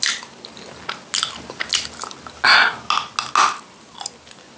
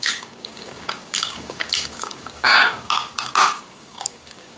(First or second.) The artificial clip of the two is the second